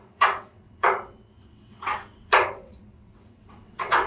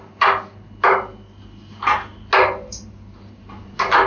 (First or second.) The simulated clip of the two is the first